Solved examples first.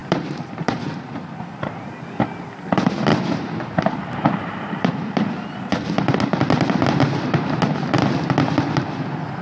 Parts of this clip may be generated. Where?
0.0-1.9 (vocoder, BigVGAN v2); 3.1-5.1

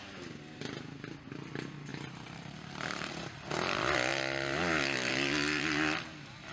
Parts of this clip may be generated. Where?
1.9-3.1 (vocoder, BigVGAN v2)

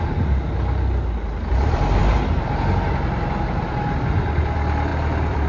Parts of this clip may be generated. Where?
4.9-5.5 (vocoder, BigVGAN v2)